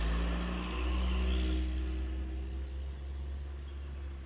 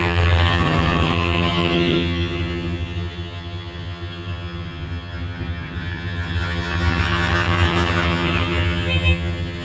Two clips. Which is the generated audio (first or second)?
second